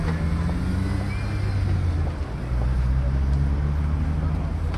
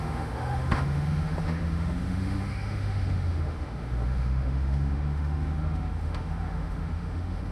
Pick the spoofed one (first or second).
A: second